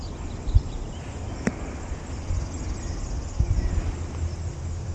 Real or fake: real